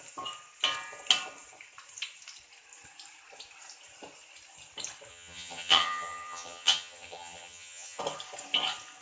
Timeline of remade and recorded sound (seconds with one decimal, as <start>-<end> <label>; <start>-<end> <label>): 0.0-5.1 recorded; 5.1-8.0 remade; 8.0-9.0 recorded